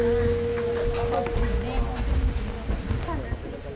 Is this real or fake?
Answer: real